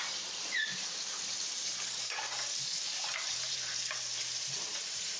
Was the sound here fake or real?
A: fake